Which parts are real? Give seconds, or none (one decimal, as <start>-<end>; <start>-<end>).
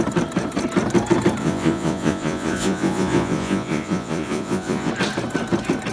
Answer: 0.0-1.4; 4.9-5.9